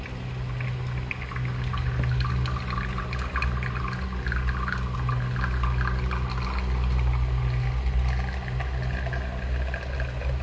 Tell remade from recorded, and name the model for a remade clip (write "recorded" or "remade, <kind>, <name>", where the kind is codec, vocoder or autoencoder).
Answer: recorded